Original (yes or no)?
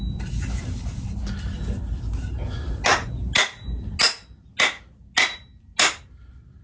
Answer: yes